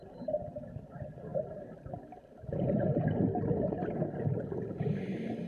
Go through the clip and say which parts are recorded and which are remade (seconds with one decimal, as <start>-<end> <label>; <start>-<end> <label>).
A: 0.0-5.5 recorded